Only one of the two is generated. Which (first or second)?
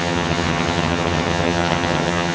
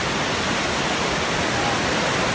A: first